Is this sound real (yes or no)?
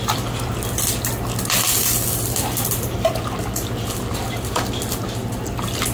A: yes